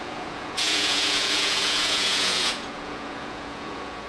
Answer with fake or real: fake